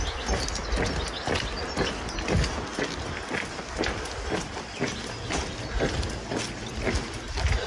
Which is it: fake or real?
real